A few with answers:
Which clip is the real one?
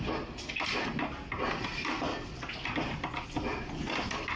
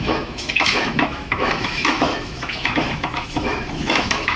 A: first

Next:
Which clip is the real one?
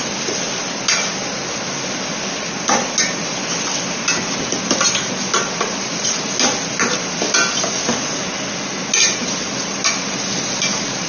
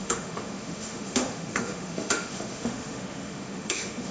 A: first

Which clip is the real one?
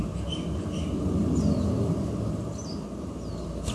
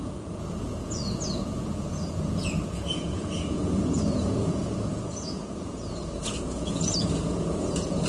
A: first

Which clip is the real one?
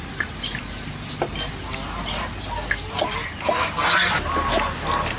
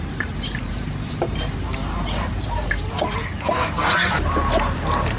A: first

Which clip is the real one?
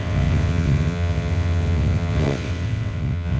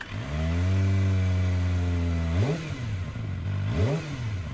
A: second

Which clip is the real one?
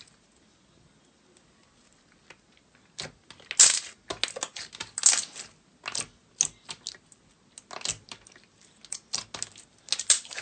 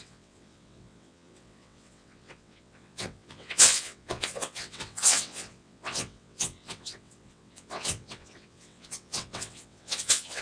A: first